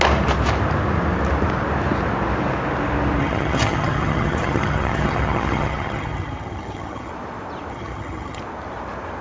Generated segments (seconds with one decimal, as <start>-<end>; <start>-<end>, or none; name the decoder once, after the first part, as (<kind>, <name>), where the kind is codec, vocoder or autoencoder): 3.2-7.1 (vocoder, HiFi-GAN); 7.7-8.4